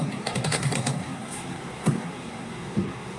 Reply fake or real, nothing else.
fake